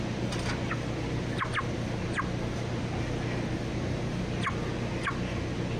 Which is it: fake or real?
real